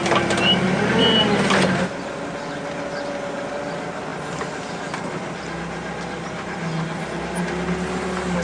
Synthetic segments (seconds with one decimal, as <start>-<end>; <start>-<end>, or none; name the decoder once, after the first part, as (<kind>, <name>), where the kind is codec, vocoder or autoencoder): none